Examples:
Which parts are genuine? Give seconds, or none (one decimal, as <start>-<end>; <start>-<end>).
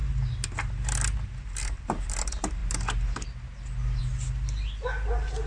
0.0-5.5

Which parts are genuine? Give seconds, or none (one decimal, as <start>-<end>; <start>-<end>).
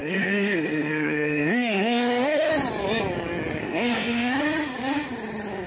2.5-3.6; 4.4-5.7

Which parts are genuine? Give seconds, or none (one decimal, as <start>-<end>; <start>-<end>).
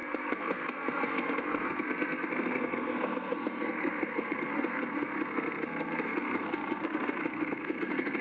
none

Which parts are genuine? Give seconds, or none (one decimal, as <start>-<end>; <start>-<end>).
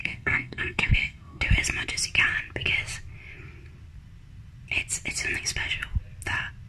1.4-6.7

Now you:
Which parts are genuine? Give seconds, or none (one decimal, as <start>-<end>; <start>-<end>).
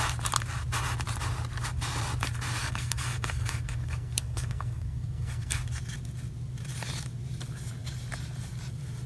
0.0-2.6; 5.6-9.1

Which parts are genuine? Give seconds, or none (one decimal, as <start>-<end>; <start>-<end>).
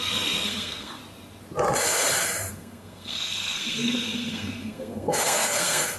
1.0-2.5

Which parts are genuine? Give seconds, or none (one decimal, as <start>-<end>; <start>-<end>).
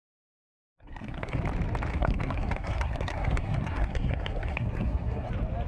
0.0-0.6; 1.4-1.9; 5.3-5.7